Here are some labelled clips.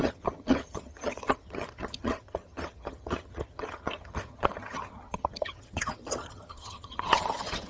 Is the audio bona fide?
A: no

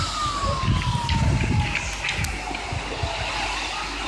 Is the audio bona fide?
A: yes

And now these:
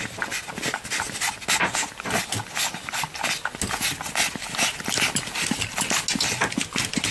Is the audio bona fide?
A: yes